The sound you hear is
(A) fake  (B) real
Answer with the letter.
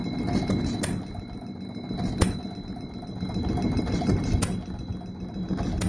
B